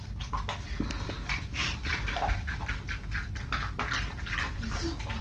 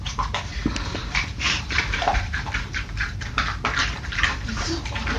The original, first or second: first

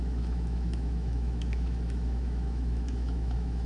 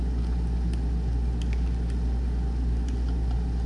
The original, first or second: second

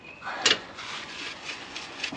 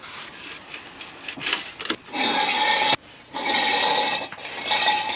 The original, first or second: second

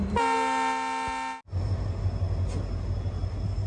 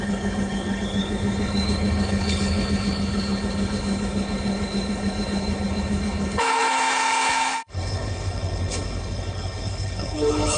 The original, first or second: first